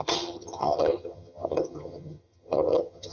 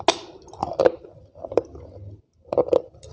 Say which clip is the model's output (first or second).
first